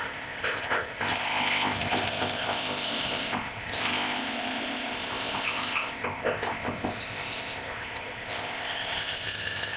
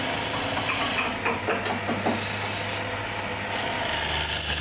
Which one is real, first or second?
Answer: second